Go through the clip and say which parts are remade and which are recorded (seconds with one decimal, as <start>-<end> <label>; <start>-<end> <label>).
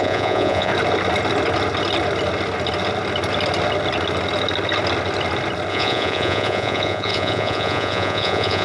0.0-0.7 remade; 0.7-5.7 recorded; 5.7-8.6 remade